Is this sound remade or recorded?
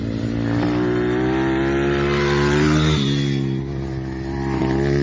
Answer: recorded